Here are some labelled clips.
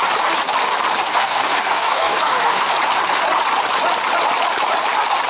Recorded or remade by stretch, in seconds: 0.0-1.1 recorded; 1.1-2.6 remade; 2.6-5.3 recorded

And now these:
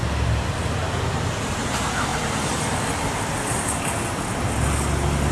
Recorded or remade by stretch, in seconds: 0.0-0.5 remade; 0.5-2.1 recorded; 2.1-2.9 remade; 2.9-5.3 recorded